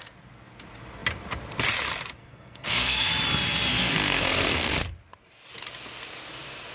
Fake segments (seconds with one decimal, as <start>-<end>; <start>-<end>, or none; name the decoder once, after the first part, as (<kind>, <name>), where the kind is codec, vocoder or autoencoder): 2.2-3.1 (codec, SNAC); 3.8-4.7